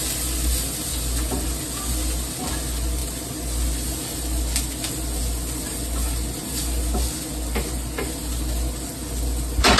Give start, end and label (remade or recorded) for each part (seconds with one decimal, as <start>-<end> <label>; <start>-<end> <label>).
0.0-9.8 recorded